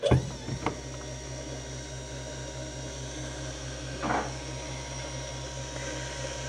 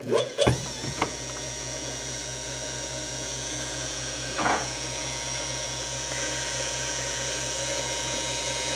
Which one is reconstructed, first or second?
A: second